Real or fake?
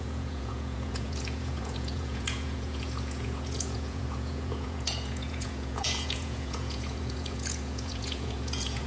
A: fake